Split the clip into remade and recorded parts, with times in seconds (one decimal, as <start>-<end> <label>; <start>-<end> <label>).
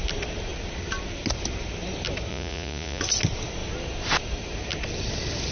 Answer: 0.0-2.3 recorded; 2.3-3.0 remade; 3.0-5.5 recorded